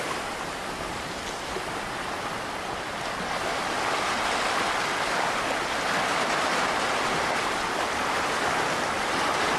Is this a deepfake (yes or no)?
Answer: no